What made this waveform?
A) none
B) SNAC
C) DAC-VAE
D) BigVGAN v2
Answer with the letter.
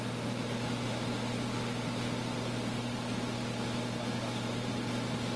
A